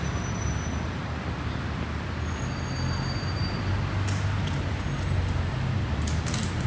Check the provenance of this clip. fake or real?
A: real